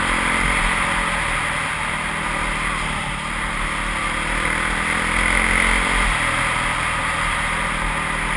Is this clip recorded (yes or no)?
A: yes